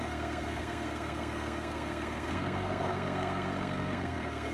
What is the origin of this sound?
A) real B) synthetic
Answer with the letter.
B